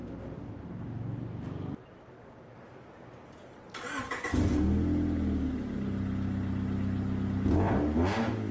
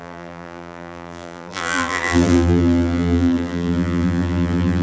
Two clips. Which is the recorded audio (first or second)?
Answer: first